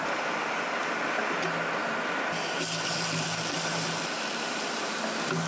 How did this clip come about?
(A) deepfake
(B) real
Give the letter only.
B